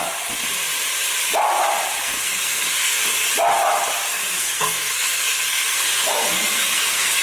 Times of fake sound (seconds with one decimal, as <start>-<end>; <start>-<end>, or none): 2.0-3.3; 4.1-7.2

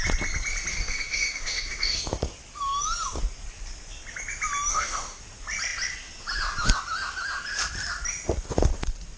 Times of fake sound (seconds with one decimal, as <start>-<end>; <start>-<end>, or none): 0.7-2.0; 4.7-5.2

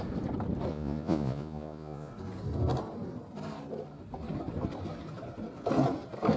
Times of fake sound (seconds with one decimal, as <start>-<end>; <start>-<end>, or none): 0.7-2.1

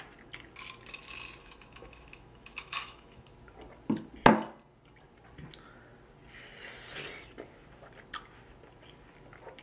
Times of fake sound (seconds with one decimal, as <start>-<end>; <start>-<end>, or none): 1.4-3.3